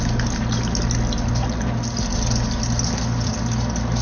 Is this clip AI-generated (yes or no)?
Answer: no